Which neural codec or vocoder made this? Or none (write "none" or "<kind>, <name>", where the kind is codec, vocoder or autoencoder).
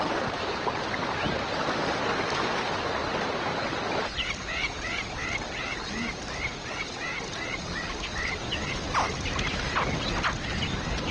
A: none